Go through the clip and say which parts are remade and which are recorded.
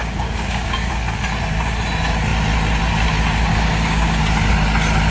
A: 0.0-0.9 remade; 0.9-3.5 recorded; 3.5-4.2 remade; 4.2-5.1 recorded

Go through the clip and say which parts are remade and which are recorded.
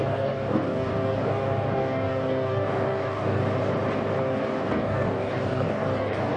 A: 0.0-3.4 remade; 3.4-4.2 recorded; 4.2-6.4 remade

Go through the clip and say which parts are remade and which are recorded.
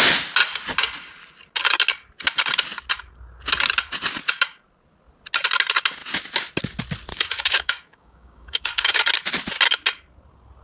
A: 0.0-7.1 recorded; 7.1-9.0 remade; 9.0-10.6 recorded